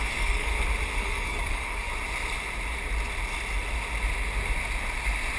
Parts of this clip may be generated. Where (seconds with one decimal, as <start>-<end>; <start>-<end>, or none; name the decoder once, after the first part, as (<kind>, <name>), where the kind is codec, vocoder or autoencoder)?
0.0-0.5 (codec, DAC); 1.0-1.9